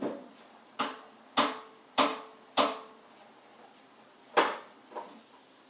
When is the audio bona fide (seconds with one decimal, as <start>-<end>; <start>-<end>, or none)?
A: 0.0-5.7